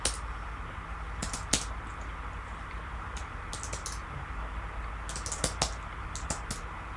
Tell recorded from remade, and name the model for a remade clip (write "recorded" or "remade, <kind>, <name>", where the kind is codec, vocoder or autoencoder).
recorded